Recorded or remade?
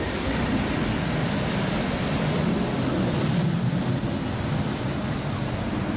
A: recorded